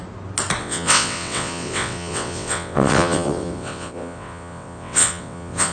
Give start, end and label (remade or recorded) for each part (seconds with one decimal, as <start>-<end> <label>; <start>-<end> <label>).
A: 0.0-0.6 recorded; 0.6-5.7 remade